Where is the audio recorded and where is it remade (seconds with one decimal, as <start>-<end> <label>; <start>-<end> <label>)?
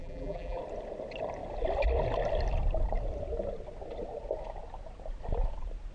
0.0-0.6 remade; 0.6-5.9 recorded